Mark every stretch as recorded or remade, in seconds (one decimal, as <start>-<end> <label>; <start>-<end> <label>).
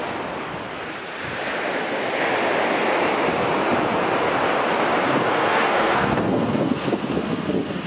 0.0-5.1 recorded; 5.1-7.9 remade